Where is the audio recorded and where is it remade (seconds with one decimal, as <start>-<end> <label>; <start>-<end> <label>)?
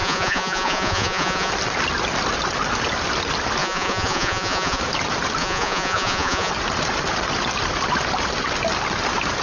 0.0-1.5 remade; 1.5-3.6 recorded; 3.6-4.8 remade; 4.8-5.4 recorded; 5.4-6.5 remade; 6.5-9.4 recorded